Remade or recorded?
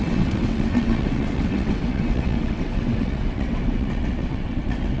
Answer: remade